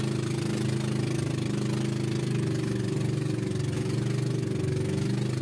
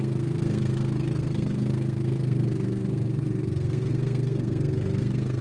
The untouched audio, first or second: first